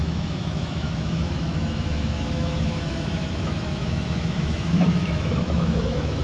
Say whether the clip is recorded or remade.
remade